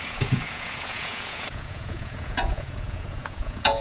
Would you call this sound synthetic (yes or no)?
yes